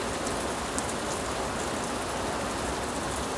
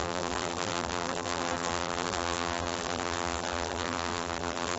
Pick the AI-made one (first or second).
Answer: second